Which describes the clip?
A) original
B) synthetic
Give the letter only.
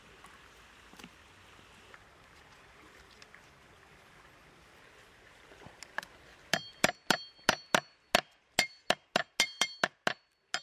A